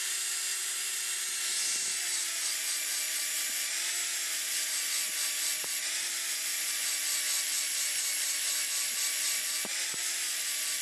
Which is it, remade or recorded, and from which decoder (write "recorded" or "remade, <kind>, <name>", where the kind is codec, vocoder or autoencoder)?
recorded